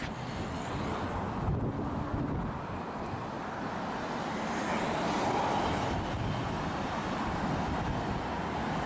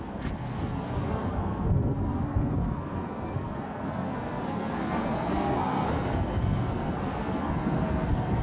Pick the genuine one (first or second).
first